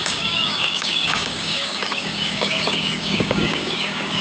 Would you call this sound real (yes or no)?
no